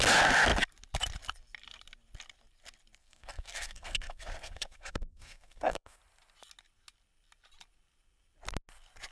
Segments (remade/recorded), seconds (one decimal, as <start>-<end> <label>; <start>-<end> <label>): 0.0-3.0 recorded; 3.0-6.0 remade; 6.0-9.1 recorded